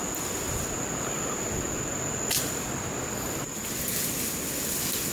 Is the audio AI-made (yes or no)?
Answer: no